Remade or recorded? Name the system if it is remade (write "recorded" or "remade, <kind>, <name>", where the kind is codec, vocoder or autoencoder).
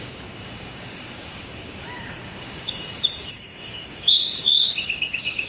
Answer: remade, codec, DAC